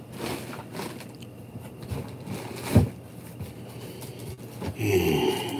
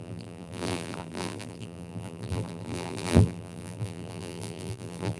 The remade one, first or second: second